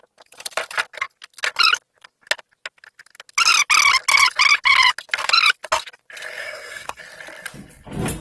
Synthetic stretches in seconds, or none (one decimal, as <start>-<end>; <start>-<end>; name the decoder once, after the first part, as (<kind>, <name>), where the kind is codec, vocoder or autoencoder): 6.4-7.0 (codec, SNAC)